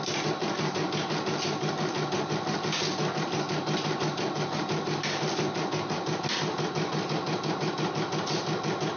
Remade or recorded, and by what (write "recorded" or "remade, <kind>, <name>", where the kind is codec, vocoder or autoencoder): recorded